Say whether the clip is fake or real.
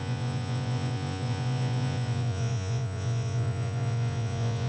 fake